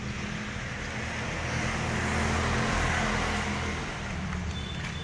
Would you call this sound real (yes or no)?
yes